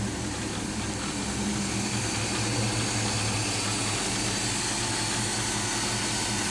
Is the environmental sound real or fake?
real